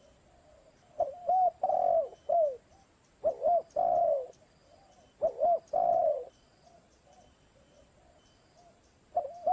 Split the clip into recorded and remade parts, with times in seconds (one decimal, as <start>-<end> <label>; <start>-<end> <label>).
0.0-5.9 recorded; 5.9-7.8 remade; 7.8-9.5 recorded